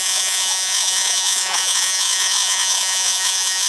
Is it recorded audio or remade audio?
remade